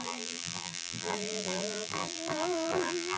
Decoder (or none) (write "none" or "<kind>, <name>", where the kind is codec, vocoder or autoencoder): vocoder, BigVGAN v2